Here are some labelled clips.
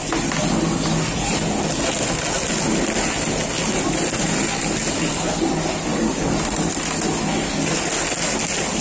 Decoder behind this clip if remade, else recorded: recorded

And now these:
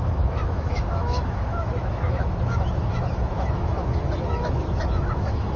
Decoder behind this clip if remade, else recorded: remade, autoencoder, DAC-VAE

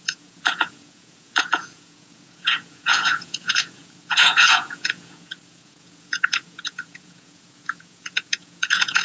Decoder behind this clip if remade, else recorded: remade, vocoder, Vocos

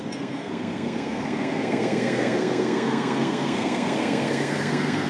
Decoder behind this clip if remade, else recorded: remade, codec, SNAC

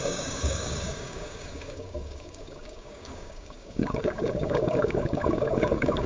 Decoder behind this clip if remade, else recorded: remade, codec, DAC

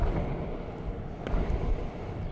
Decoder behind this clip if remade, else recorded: recorded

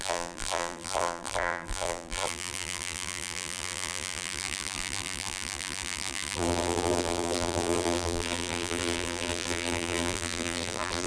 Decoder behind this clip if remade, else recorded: remade, vocoder, BigVGAN v2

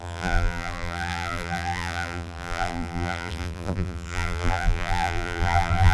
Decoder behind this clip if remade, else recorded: remade, vocoder, BigVGAN v2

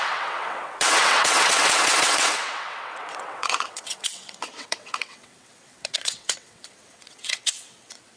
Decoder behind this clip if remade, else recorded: remade, vocoder, WaveNeXt